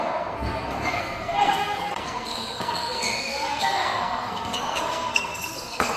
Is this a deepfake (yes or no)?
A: yes